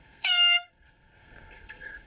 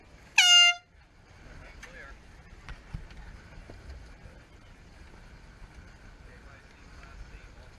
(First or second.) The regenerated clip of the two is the first